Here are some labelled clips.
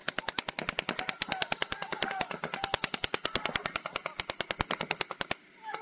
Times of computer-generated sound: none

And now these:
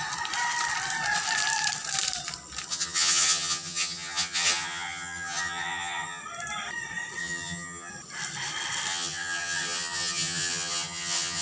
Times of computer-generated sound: 2.7-6.2 (vocoder, HiFi-GAN); 7.2-7.9; 8.9-11.4

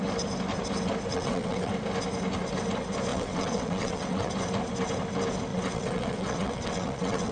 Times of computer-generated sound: 1.1-1.7 (vocoder, WaveNeXt); 3.1-4.3; 5.5-7.3